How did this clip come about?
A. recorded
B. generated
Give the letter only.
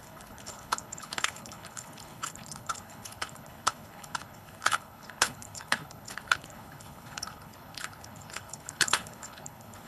B